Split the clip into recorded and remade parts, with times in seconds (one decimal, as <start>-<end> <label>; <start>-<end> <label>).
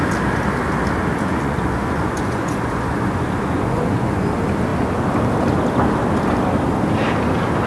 0.0-1.1 recorded; 1.1-4.3 remade; 4.3-7.7 recorded